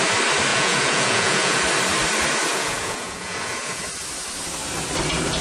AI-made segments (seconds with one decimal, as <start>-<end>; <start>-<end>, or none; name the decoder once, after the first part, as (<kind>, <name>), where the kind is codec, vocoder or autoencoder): 0.5-1.6 (vocoder, Vocos); 2.5-3.8